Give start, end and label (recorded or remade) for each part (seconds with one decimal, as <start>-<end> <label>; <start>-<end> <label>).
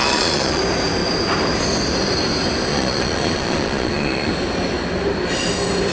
0.0-0.6 remade; 0.6-2.7 recorded; 2.7-4.3 remade; 4.3-5.9 recorded